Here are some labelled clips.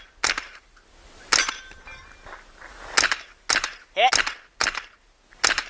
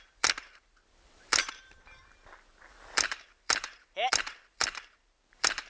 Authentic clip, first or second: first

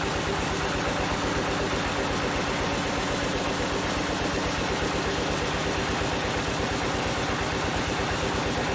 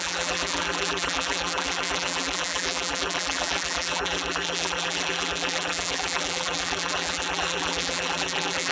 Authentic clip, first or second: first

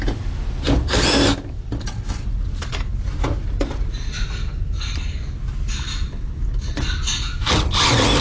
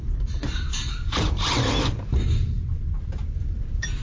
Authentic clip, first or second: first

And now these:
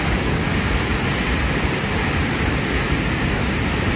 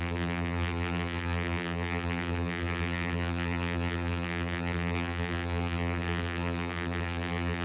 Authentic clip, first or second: first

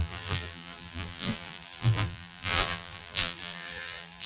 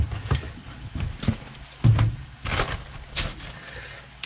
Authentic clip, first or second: second